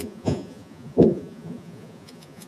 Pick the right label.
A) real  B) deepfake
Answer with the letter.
B